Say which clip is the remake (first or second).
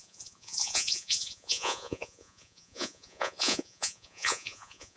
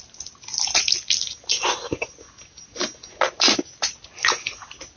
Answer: first